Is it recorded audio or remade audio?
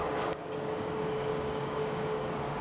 remade